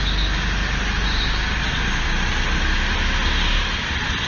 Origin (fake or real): real